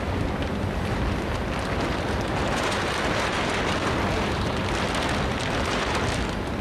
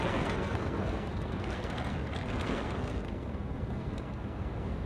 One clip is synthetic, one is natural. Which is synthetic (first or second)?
second